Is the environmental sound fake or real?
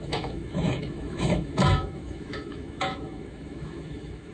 fake